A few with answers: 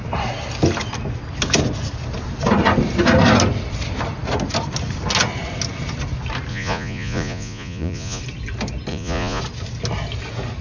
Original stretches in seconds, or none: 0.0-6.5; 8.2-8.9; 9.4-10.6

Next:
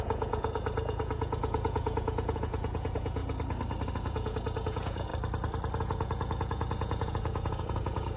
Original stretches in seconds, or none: 3.2-3.9; 5.1-5.8